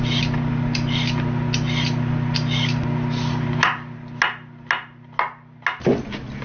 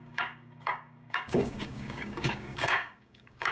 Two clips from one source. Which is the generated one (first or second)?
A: second